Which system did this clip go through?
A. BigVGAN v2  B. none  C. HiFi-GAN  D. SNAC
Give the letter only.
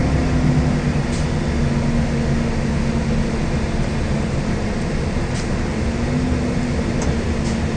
B